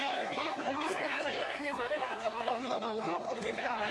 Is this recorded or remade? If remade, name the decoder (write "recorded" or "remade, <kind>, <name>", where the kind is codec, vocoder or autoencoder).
remade, codec, SNAC